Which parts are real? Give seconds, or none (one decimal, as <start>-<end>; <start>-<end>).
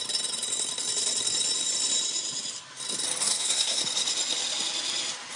0.0-3.2; 3.8-5.4